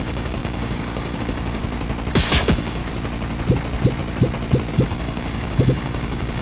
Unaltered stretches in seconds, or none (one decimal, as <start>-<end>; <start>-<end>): 1.6-2.1; 2.8-4.7